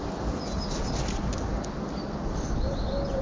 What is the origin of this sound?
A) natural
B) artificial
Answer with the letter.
A